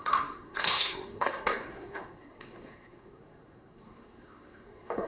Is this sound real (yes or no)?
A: no